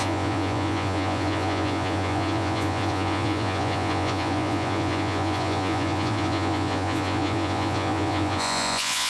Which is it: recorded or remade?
remade